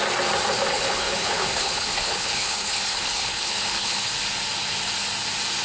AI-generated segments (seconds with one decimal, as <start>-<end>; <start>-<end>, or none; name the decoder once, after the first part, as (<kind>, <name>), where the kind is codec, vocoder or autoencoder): 0.7-4.1 (codec, HILCodec)